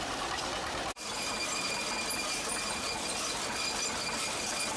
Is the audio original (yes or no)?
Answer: yes